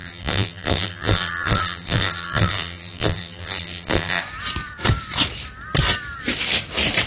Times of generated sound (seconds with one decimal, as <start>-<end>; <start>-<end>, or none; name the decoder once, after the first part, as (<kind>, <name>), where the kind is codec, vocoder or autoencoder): 0.0-4.2 (vocoder, BigVGAN v2)